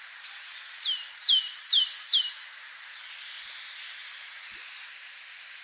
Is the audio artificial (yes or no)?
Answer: yes